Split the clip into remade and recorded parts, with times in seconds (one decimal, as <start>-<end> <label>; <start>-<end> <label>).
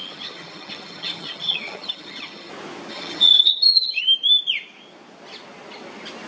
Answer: 0.0-2.5 remade; 2.5-2.9 recorded; 2.9-4.0 remade; 4.0-6.3 recorded